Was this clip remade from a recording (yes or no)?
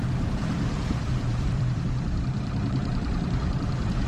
yes